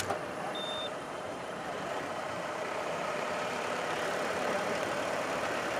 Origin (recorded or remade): remade